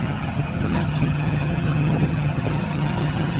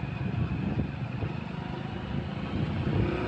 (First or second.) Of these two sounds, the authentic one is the second